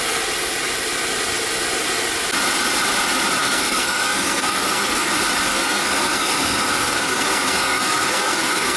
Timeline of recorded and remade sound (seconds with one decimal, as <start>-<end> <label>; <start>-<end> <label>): 0.0-3.4 recorded; 3.4-5.1 remade; 5.1-5.5 recorded; 5.5-8.8 remade

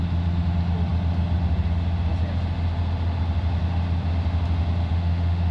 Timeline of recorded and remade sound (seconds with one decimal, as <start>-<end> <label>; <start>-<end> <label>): 0.0-4.9 recorded; 4.9-5.5 remade